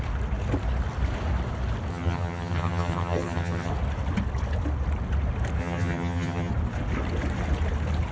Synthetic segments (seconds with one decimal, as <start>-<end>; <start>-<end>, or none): 1.9-3.7; 5.6-6.5